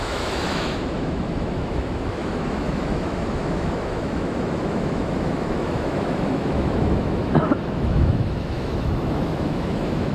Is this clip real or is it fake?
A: fake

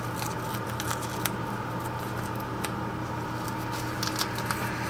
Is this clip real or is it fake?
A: real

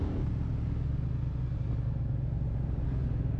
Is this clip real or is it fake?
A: real